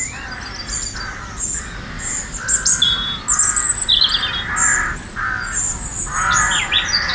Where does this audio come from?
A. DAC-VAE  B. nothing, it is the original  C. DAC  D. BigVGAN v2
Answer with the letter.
B